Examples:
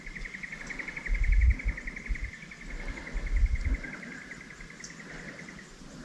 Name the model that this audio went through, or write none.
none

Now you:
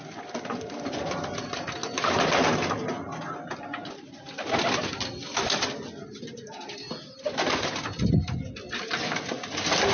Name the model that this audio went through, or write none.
none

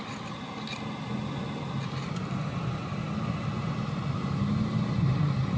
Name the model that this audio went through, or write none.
none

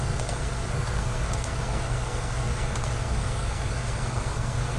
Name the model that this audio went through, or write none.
codec, SNAC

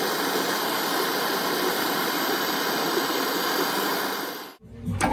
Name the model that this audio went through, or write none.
none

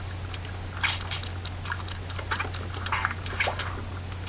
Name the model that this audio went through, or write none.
none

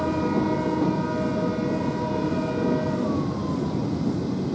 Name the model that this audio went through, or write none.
none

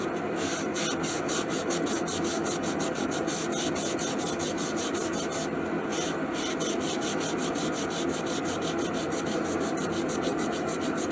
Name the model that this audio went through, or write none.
none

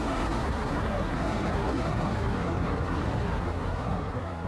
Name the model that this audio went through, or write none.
codec, SNAC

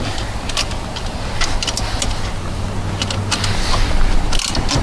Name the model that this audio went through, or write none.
none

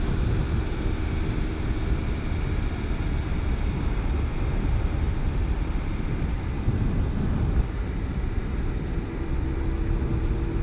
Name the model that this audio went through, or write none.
none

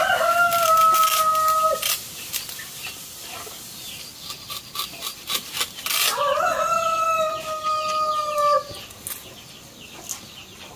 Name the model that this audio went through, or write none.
none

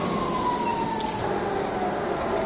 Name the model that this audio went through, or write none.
none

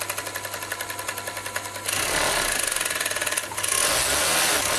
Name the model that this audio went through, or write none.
none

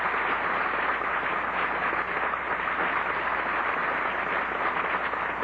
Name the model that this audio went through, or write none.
none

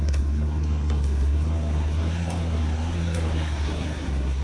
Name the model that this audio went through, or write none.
codec, SNAC